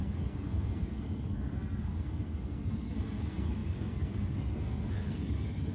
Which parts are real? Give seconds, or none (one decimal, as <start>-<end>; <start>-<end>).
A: none